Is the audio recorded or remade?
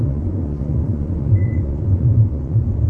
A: remade